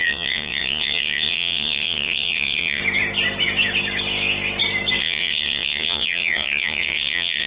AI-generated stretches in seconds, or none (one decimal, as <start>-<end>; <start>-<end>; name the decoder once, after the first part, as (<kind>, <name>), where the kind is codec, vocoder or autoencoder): 0.0-2.8 (vocoder, WaveNeXt); 5.0-7.5